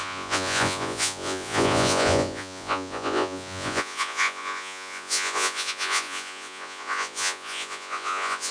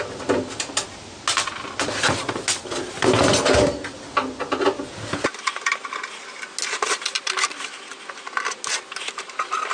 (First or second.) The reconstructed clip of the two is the first